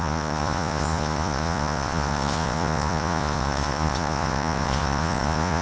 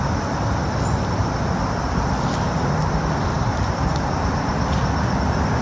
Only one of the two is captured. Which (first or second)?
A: second